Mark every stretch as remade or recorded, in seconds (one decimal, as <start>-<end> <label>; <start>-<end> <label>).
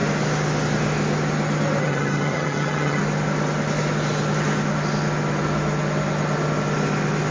0.0-1.8 recorded; 1.8-3.0 remade; 3.0-7.3 recorded